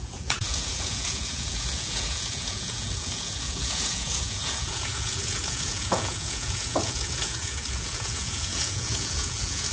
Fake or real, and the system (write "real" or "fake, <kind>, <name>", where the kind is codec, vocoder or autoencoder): fake, vocoder, Vocos